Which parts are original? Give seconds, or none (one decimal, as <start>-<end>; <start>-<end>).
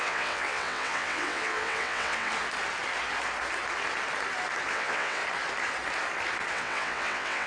2.3-4.7; 5.2-6.5